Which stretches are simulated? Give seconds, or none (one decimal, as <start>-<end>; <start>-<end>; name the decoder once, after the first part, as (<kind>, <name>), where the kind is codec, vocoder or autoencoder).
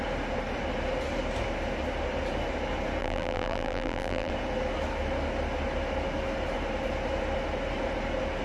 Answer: 3.0-4.3 (vocoder, BigVGAN v2)